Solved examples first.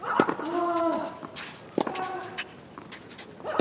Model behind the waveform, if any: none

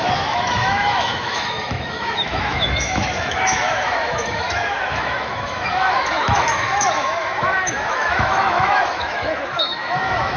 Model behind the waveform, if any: autoencoder, DAC-VAE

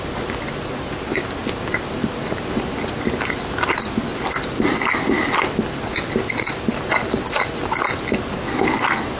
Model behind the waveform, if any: none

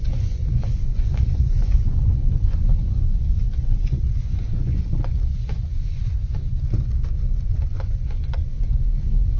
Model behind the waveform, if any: vocoder, Vocos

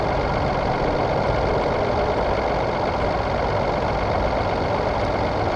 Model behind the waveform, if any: none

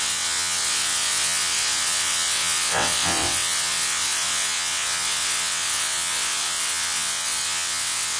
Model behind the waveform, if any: vocoder, WaveNeXt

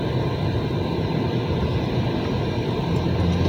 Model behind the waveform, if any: none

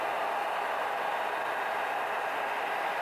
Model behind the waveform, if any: none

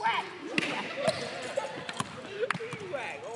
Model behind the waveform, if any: none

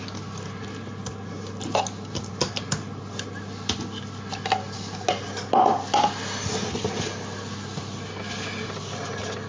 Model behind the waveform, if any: none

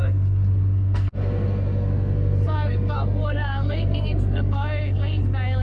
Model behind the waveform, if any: codec, SNAC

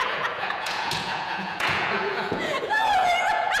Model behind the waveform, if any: vocoder, Vocos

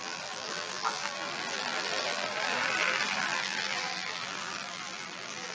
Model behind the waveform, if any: vocoder, BigVGAN v2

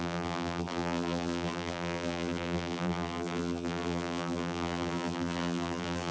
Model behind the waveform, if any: vocoder, BigVGAN v2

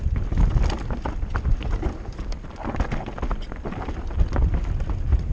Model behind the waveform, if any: none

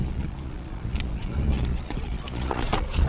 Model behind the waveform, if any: vocoder, Vocos